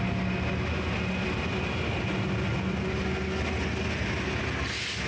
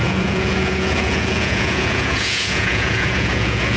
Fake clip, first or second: second